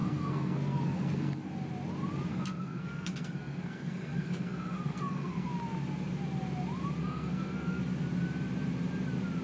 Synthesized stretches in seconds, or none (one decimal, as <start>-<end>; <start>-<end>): 0.0-1.5; 2.3-5.5; 7.0-7.8